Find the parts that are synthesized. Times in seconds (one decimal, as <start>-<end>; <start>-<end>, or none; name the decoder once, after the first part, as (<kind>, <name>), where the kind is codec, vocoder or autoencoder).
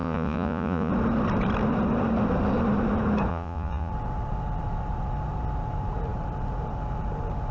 0.0-0.9 (vocoder, Vocos); 3.3-3.9